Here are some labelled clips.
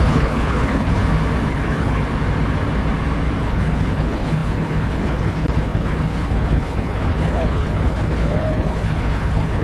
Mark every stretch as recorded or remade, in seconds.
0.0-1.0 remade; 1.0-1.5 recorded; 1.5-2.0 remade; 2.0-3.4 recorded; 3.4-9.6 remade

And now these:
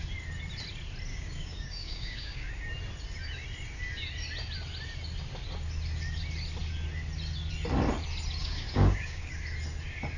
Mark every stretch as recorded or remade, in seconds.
0.0-1.1 recorded; 1.1-2.5 remade; 2.5-8.4 recorded; 8.4-9.3 remade; 9.3-10.2 recorded

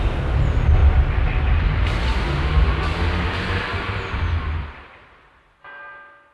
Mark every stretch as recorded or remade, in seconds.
0.0-3.7 recorded; 3.7-4.2 remade; 4.2-6.3 recorded